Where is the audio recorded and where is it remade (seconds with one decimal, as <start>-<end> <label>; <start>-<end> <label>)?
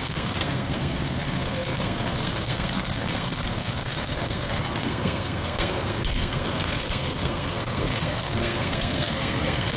0.0-9.8 remade